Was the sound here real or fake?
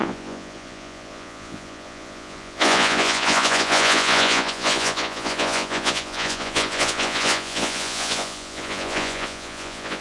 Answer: fake